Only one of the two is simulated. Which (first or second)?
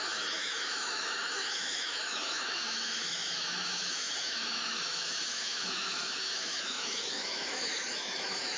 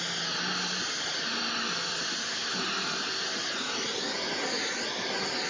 first